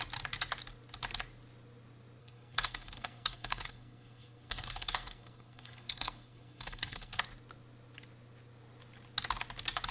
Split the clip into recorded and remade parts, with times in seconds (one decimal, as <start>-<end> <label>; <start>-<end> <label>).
0.0-2.2 recorded; 2.2-7.2 remade; 7.2-9.9 recorded